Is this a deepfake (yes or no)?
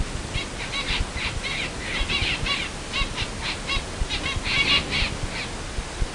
no